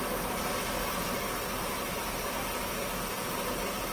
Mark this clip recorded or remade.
recorded